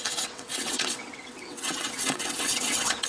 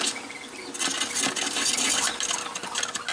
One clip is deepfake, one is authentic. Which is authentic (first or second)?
second